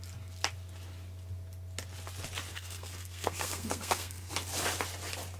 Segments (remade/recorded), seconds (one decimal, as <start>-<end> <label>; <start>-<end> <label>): 0.0-2.5 recorded; 2.5-4.3 remade; 4.3-5.4 recorded